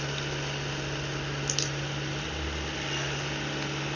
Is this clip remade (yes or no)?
no